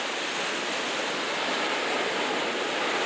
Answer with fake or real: real